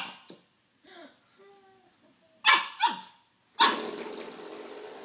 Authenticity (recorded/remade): recorded